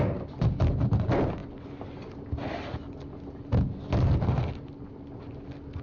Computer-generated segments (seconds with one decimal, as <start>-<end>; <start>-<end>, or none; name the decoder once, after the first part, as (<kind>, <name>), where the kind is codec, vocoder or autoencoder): none